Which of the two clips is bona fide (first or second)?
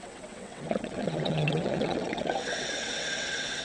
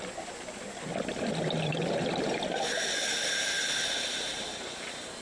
second